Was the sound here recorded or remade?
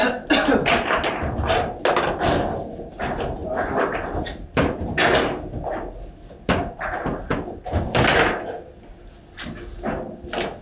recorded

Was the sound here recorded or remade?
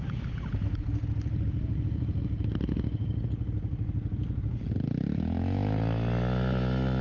recorded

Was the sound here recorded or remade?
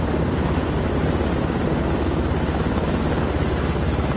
recorded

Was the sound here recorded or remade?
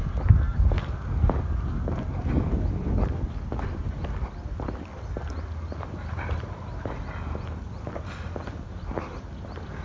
recorded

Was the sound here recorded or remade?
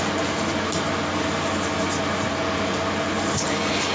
recorded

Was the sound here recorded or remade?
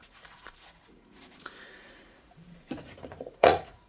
remade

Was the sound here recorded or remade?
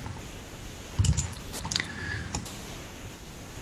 remade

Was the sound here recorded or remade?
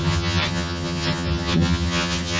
remade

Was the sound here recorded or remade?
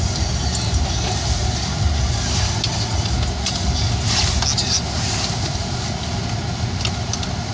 recorded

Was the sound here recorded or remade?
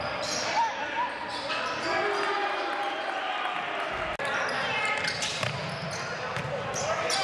recorded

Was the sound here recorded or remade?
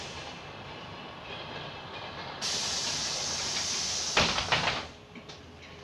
recorded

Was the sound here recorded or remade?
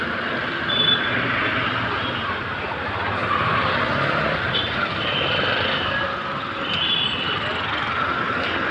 recorded